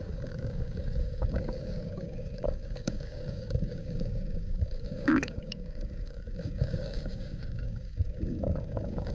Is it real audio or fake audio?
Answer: fake